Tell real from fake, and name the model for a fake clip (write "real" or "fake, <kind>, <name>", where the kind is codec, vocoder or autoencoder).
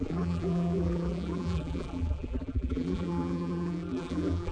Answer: fake, vocoder, BigVGAN v2